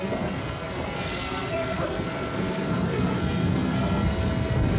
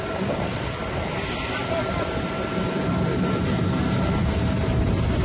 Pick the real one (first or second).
second